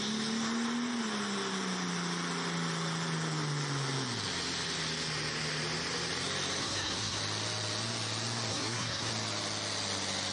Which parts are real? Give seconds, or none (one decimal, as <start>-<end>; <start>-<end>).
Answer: 0.0-6.6; 7.2-8.5; 9.1-10.3